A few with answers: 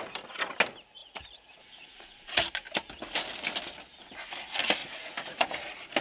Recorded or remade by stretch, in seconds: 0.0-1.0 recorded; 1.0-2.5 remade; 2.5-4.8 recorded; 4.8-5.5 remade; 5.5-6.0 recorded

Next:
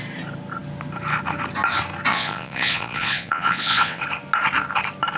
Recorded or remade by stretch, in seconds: 0.0-2.1 recorded; 2.1-4.0 remade; 4.0-5.2 recorded

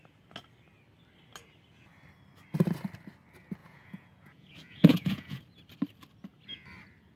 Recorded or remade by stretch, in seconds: 0.0-3.6 recorded; 3.6-5.4 remade; 5.4-7.2 recorded

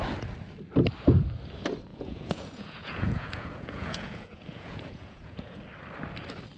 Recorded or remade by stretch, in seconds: 0.0-1.9 recorded; 1.9-5.6 remade; 5.6-6.6 recorded

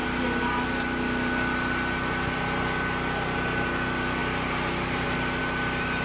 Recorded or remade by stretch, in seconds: 0.0-6.0 recorded

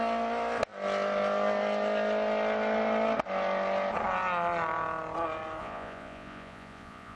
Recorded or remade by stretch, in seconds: 0.0-5.6 recorded; 5.6-7.2 remade